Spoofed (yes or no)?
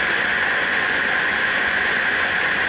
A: yes